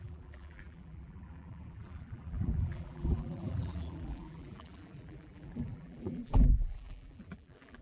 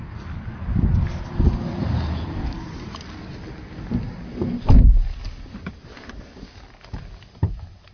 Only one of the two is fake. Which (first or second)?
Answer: first